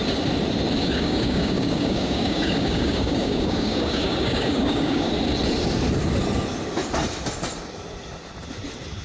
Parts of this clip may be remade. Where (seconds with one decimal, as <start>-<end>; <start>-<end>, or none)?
0.8-5.1